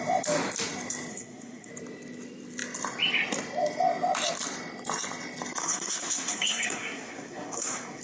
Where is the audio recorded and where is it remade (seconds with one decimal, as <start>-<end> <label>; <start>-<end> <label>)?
0.0-1.1 recorded; 1.1-1.7 remade; 1.7-5.6 recorded; 5.6-8.0 remade